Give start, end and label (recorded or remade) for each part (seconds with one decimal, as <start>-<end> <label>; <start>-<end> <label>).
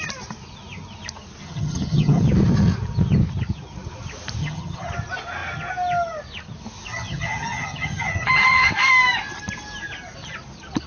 0.0-1.4 recorded; 1.4-2.2 remade; 2.2-4.4 recorded; 4.4-4.9 remade; 4.9-6.9 recorded; 6.9-8.7 remade; 8.7-10.9 recorded